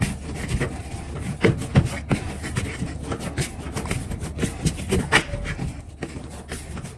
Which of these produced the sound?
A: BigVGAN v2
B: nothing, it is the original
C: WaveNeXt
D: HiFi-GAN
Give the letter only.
B